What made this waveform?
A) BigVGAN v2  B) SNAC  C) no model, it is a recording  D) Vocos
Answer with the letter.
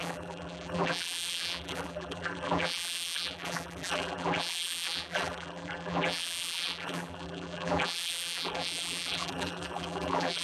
A